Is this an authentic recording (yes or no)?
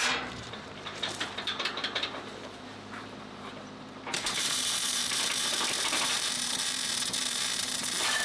no